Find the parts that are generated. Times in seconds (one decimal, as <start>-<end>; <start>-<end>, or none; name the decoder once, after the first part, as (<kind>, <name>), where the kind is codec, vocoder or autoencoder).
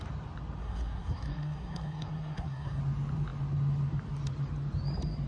0.6-2.8 (codec, SNAC)